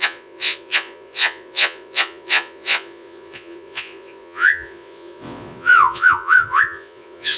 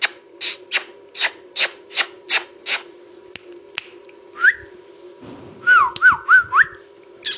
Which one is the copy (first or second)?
first